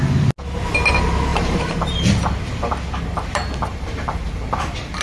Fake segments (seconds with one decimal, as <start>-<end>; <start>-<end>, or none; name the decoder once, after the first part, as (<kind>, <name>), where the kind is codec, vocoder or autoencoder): 1.3-2.1 (vocoder, BigVGAN v2); 3.7-4.2